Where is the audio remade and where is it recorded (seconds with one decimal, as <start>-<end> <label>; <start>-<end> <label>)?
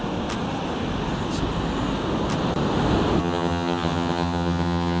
0.0-3.2 recorded; 3.2-5.0 remade